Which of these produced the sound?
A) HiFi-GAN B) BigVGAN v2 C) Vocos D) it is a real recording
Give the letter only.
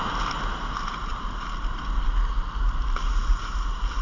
D